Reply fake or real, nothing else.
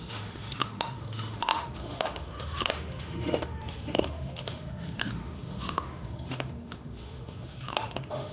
fake